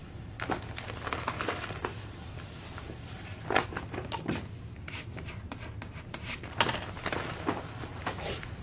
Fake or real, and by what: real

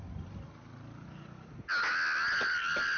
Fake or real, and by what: real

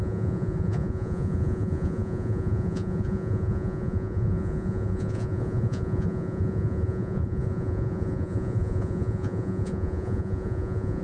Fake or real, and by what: fake, vocoder, Vocos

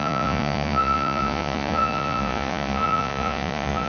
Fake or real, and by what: fake, vocoder, Vocos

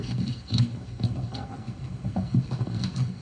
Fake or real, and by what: fake, codec, SNAC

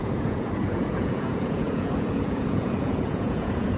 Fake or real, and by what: fake, vocoder, Vocos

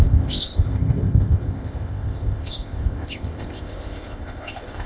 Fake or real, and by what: fake, codec, ZipCodec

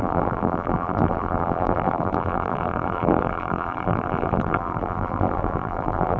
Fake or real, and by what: fake, vocoder, BigVGAN v2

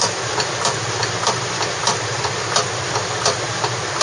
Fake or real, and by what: fake, vocoder, BigVGAN v2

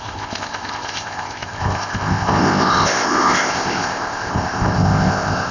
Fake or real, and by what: fake, codec, ZipCodec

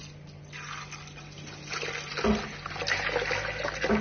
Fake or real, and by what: real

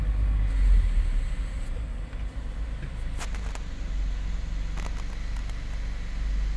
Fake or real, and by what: real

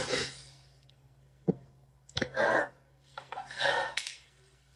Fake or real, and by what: fake, codec, SNAC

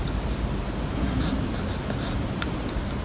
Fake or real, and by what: real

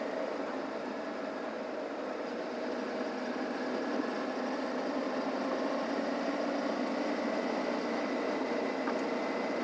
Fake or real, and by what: real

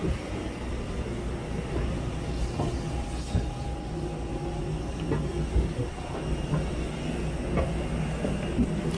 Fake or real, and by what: real